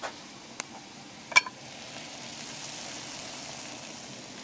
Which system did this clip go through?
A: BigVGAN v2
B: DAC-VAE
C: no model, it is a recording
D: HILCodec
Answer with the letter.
C